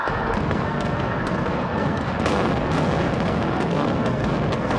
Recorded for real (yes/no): no